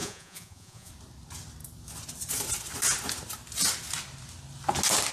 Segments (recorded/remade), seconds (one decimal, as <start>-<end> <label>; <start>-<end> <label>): 0.0-0.9 remade; 0.9-5.1 recorded